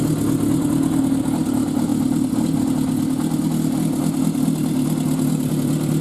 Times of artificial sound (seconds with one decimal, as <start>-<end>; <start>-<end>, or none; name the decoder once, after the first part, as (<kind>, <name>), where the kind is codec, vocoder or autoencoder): none